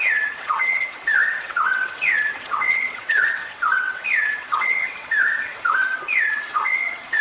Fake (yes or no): yes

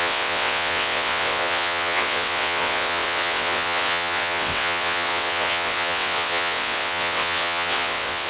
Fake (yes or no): yes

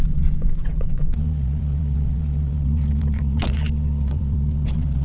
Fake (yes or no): yes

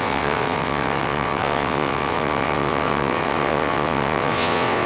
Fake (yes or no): yes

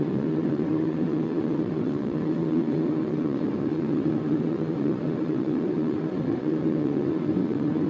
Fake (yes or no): yes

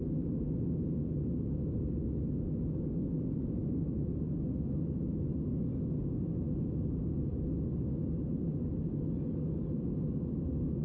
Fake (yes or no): no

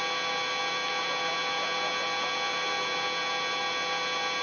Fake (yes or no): no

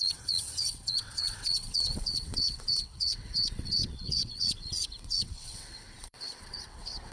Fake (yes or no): yes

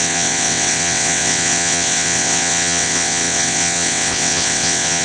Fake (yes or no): yes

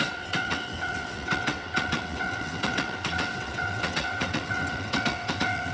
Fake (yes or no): yes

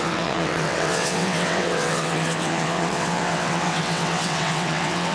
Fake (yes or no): yes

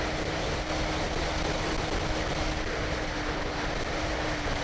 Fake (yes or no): no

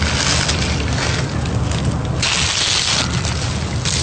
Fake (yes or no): no